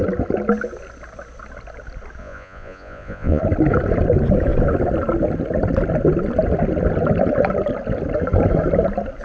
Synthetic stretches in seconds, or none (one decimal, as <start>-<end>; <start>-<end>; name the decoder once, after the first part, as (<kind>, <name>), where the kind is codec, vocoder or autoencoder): 2.2-3.4 (vocoder, Vocos)